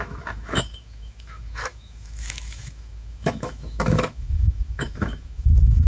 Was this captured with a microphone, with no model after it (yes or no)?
no